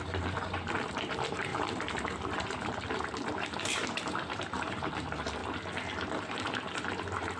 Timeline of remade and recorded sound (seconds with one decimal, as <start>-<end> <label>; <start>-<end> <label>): 0.0-5.4 remade; 5.4-6.3 recorded; 6.3-7.4 remade